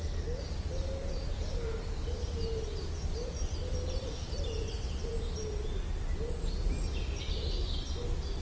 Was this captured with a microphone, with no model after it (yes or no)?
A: yes